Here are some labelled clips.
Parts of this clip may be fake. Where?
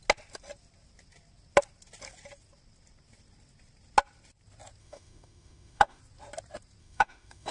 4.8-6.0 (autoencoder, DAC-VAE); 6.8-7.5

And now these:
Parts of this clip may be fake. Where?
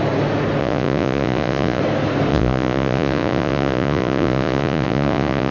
0.6-1.8 (vocoder, Vocos); 2.3-5.5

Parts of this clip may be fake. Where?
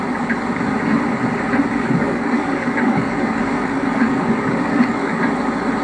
1.7-5.2 (codec, DAC)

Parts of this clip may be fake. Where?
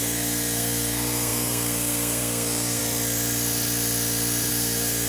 0.0-2.8 (codec, SNAC); 4.5-5.1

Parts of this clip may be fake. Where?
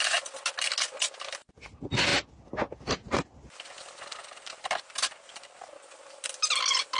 none